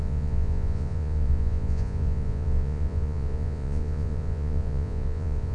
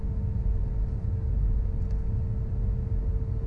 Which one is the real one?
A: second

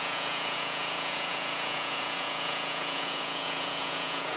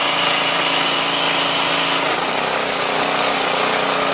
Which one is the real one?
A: second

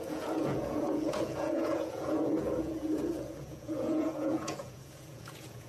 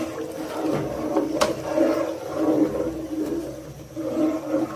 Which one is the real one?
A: second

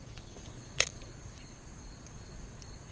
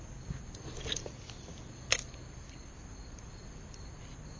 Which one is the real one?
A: second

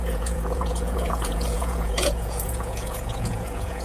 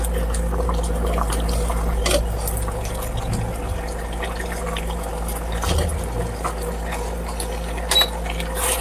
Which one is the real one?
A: second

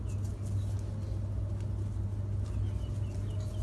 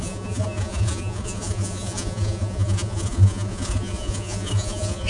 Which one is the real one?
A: first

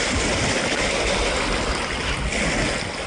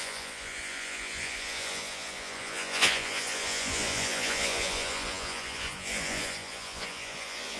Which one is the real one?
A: first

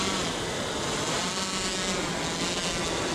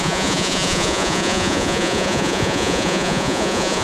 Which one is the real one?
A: first